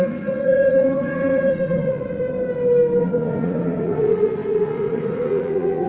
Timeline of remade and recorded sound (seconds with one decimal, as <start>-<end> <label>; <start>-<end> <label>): 0.0-2.2 remade; 2.2-3.0 recorded; 3.0-5.9 remade